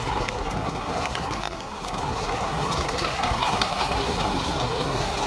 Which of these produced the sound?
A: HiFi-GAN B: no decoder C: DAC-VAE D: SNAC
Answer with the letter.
D